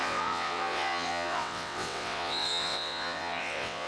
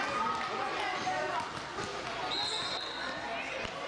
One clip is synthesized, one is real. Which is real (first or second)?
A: second